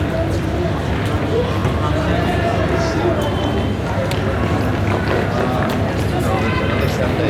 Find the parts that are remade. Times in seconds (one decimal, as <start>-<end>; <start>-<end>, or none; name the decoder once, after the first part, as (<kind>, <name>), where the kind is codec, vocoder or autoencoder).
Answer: none